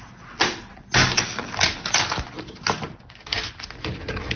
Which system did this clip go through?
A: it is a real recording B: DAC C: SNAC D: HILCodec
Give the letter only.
A